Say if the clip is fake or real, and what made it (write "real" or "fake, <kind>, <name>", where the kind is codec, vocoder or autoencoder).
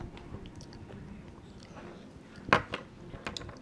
real